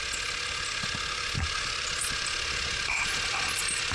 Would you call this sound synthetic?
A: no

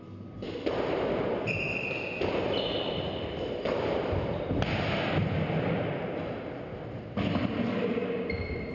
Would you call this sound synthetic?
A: no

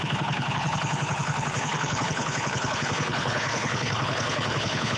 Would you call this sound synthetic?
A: yes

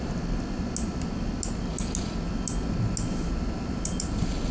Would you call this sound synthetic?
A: no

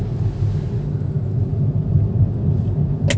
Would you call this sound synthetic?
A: no